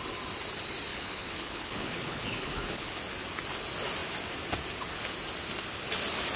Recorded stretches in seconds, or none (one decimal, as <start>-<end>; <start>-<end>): 0.0-0.9; 3.0-6.4